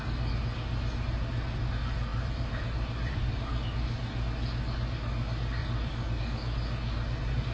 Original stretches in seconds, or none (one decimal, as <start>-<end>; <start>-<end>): 0.0-2.1; 3.4-5.6; 6.2-7.5